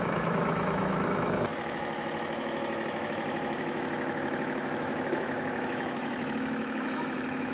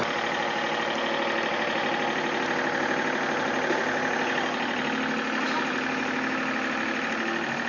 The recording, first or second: second